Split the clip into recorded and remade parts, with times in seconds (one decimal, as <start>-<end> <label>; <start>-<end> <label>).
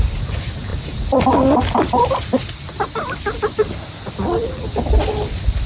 0.0-5.7 remade